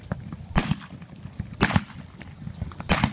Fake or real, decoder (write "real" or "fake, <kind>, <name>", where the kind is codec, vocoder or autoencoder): real